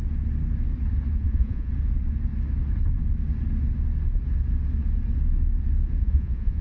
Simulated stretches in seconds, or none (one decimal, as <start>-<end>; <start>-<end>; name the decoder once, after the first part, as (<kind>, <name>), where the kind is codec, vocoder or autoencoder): 1.1-1.7 (vocoder, Vocos); 6.0-6.6